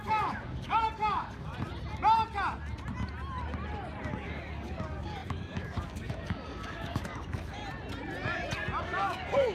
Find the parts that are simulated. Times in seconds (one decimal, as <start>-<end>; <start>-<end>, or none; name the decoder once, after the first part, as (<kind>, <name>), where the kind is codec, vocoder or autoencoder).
0.0-1.5 (codec, DAC); 4.1-7.6; 8.8-9.5